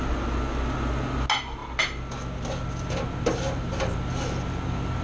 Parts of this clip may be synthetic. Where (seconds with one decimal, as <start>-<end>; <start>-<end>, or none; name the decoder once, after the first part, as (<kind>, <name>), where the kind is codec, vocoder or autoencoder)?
none